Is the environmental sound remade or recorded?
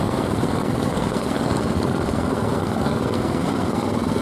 remade